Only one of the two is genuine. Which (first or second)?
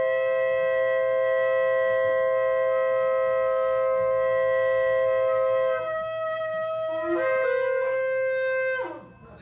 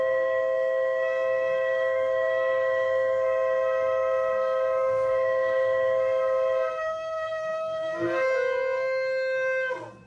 first